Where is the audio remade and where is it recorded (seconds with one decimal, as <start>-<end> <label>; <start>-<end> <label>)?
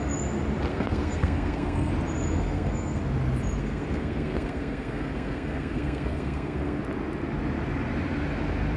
0.0-0.7 recorded; 0.7-1.9 remade; 1.9-2.4 recorded; 2.4-3.0 remade; 3.0-3.6 recorded; 3.6-6.8 remade; 6.8-8.8 recorded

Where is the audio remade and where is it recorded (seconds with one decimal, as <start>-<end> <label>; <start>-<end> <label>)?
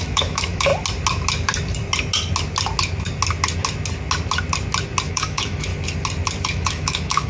0.0-0.7 remade; 0.7-5.1 recorded; 5.1-5.7 remade; 5.7-6.4 recorded; 6.4-7.3 remade